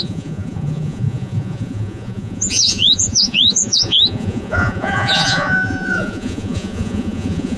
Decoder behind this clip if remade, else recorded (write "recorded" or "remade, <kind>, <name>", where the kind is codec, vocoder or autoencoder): remade, vocoder, Vocos